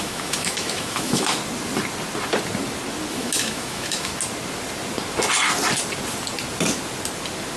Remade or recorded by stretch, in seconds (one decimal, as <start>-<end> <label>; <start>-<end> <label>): 0.0-1.4 remade; 1.4-3.1 recorded; 3.1-4.1 remade; 4.1-7.6 recorded